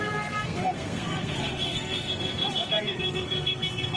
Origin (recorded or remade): remade